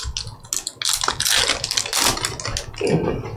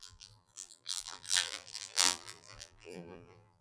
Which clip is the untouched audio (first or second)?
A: first